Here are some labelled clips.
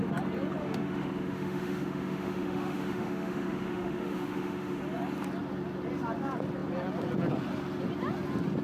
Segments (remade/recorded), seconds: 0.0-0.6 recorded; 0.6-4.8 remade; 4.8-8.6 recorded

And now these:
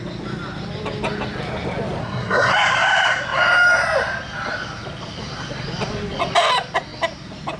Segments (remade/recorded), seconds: 0.0-2.0 recorded; 2.0-2.5 remade; 2.5-7.6 recorded

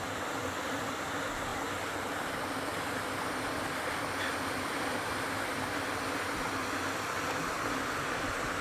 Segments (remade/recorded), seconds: 0.0-8.6 recorded

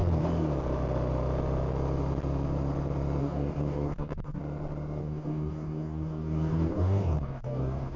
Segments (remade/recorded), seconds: 0.0-3.2 recorded; 3.2-4.4 remade; 4.4-5.0 recorded; 5.0-8.0 remade

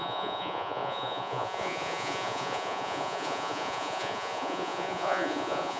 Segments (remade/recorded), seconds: 0.0-5.8 remade

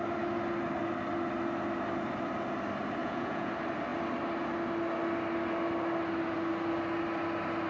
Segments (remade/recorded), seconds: 0.0-3.0 recorded; 3.0-3.5 remade; 3.5-7.7 recorded

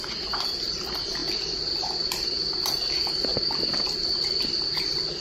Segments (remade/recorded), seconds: 0.0-5.2 remade

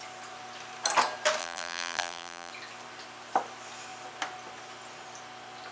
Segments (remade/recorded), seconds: 0.0-1.4 recorded; 1.4-2.5 remade; 2.5-5.7 recorded